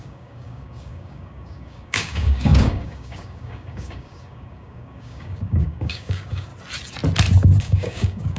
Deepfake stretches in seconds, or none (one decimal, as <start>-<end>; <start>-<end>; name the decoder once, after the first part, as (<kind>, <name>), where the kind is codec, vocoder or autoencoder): 0.0-6.5 (codec, DAC); 7.6-8.4